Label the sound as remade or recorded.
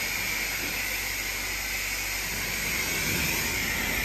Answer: recorded